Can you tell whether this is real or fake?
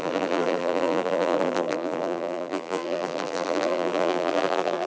fake